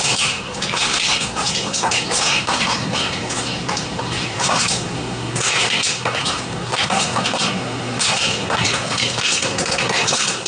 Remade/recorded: remade